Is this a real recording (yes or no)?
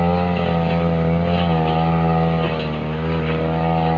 yes